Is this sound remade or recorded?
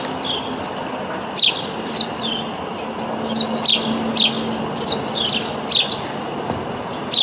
recorded